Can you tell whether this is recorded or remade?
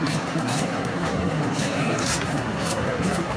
remade